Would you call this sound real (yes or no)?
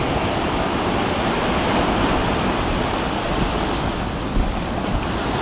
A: yes